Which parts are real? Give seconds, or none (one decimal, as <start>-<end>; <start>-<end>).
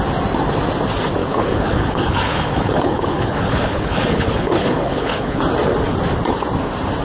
0.0-1.2; 5.4-7.0